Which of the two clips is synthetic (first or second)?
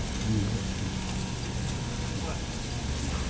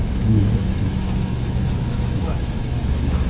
second